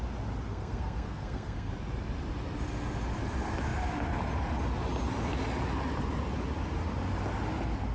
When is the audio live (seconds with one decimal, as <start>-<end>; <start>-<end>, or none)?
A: 0.0-0.5; 1.7-7.9